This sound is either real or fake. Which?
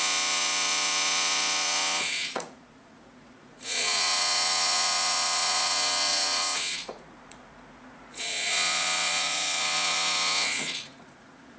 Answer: fake